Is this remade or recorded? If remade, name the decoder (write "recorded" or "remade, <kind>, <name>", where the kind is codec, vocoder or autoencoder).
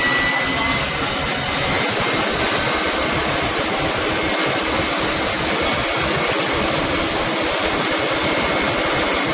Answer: recorded